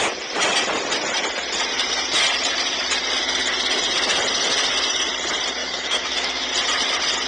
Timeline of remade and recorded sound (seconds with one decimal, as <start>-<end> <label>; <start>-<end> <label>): 0.0-5.6 recorded; 5.6-6.5 remade; 6.5-7.3 recorded